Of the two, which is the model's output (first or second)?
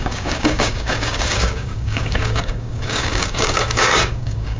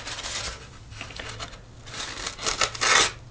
first